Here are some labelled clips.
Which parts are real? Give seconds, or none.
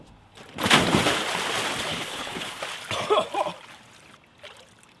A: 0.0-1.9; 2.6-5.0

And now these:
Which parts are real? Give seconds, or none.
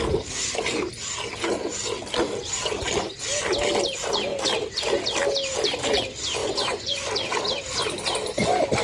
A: 0.0-6.4; 7.1-8.8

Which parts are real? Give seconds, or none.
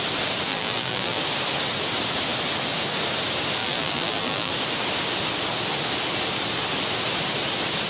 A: 0.0-0.5; 1.2-3.6; 4.5-7.9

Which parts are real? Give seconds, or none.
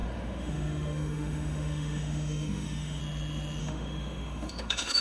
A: 3.0-3.6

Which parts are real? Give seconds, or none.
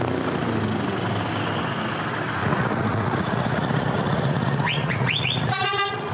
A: 0.0-2.4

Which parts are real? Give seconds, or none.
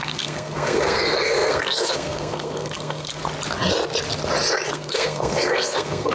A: 3.2-4.7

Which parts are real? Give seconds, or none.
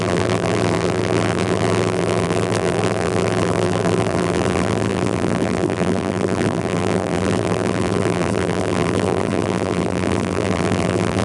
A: none